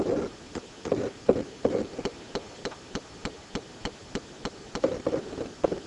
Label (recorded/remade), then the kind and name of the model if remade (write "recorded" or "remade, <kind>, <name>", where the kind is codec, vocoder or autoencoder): recorded